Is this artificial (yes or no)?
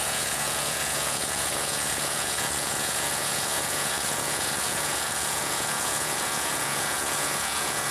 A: yes